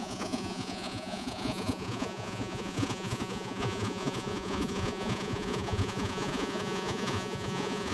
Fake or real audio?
fake